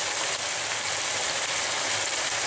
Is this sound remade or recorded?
recorded